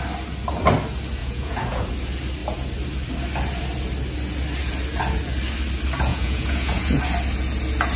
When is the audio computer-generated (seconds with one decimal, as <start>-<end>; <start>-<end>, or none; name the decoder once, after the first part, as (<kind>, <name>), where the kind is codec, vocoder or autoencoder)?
1.2-1.9 (vocoder, Vocos); 6.1-7.0